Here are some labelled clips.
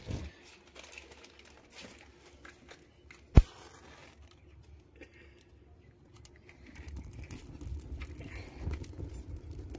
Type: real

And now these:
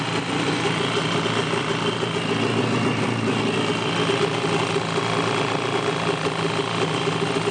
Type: real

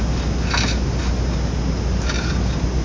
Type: real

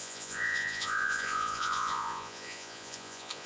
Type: fake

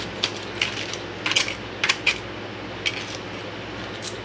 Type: real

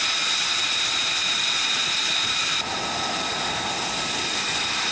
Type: real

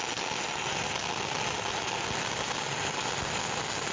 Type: real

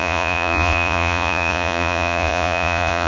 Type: fake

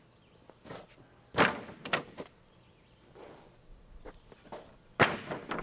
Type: real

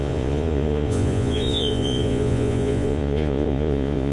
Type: fake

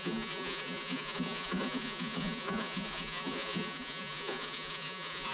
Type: fake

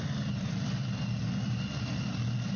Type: real